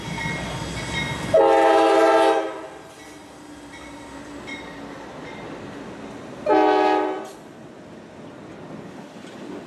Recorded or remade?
recorded